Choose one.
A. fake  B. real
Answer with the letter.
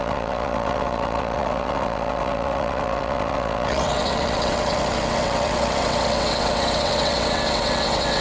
A